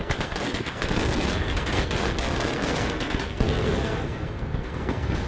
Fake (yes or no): yes